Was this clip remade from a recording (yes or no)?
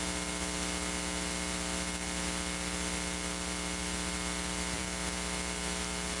no